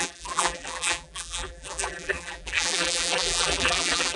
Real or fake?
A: fake